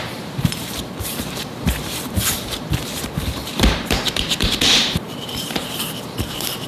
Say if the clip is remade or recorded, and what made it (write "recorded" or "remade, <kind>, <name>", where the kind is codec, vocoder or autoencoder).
remade, vocoder, BigVGAN v2